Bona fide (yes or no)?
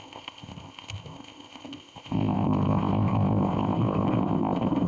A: no